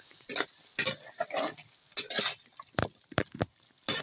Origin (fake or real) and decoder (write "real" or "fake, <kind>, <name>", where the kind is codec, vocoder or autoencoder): real